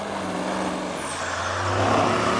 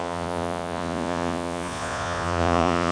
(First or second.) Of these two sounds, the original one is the first